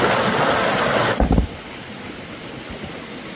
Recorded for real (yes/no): yes